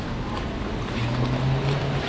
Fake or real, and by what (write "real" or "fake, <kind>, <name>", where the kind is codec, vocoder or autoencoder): real